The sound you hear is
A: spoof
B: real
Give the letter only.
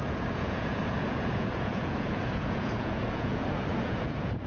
A